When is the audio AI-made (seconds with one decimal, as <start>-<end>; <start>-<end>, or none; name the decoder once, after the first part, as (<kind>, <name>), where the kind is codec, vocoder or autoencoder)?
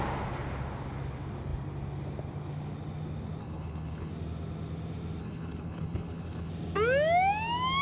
3.4-4.1 (codec, HILCodec); 5.2-6.5